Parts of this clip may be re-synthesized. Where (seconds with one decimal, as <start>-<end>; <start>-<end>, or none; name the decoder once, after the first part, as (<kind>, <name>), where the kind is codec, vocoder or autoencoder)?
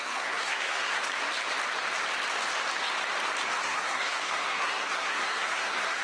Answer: 0.0-1.0 (codec, SNAC); 3.6-6.0